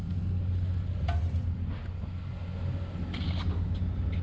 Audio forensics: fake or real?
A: real